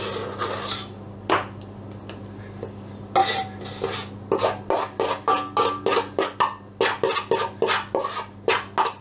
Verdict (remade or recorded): recorded